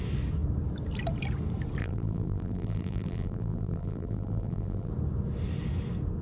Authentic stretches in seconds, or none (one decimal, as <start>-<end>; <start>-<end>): 0.0-1.8; 4.9-6.2